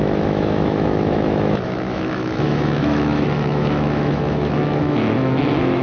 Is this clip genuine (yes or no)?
no